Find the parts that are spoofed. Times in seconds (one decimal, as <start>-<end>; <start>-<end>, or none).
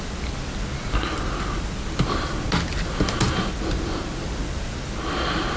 none